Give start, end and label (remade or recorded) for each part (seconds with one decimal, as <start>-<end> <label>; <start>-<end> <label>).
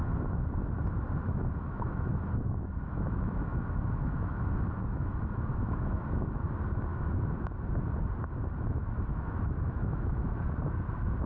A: 0.0-1.6 recorded; 1.6-6.4 remade; 6.4-6.9 recorded; 6.9-7.5 remade; 7.5-9.1 recorded; 9.1-10.6 remade; 10.6-11.3 recorded